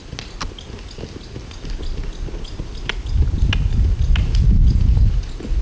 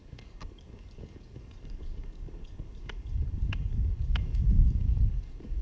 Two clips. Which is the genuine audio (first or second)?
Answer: first